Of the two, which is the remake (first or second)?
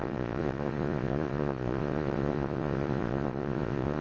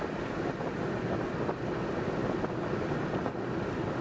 first